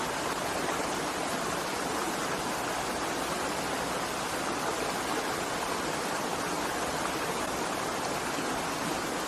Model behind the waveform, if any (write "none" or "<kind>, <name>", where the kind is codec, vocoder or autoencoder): none